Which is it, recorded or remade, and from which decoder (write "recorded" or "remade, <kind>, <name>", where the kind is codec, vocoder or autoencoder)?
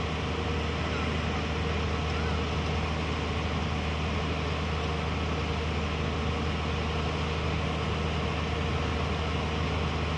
recorded